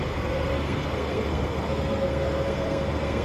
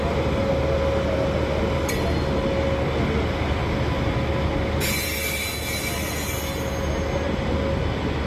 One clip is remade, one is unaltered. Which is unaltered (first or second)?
second